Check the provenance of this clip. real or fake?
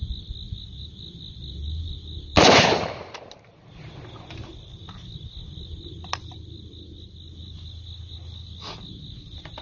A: real